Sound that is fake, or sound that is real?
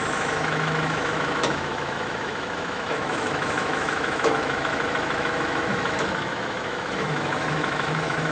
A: fake